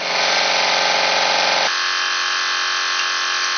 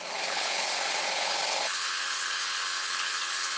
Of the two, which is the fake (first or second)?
second